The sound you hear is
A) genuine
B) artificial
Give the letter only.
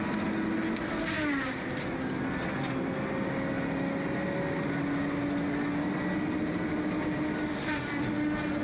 A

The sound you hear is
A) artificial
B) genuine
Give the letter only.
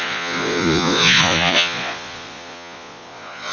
A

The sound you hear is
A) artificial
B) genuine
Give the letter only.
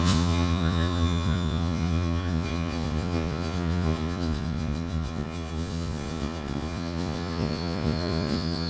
A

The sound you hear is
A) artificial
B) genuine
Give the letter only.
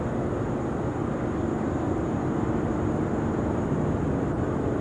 B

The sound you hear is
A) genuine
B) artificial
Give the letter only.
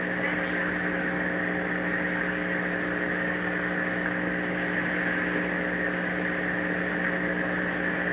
A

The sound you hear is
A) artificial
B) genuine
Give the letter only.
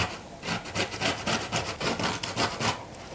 B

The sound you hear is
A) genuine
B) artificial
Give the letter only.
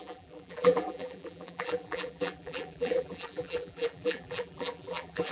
B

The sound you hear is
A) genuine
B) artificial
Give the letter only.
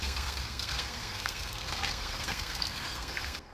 B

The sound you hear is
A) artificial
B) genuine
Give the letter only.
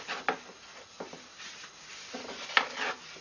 B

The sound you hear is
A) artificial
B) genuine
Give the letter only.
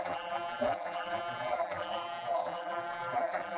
A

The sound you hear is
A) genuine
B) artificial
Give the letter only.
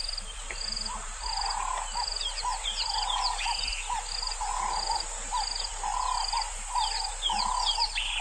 A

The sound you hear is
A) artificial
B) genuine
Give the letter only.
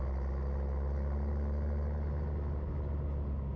B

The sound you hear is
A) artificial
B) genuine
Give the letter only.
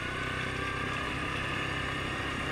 B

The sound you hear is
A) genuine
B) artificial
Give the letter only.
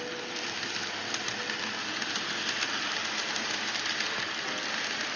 A